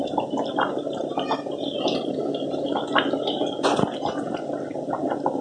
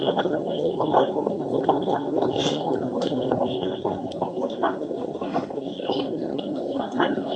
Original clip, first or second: first